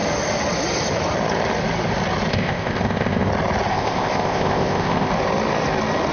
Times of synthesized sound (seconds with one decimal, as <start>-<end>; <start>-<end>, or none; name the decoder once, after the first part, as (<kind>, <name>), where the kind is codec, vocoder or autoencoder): 2.3-3.3 (codec, ZipCodec); 3.7-5.1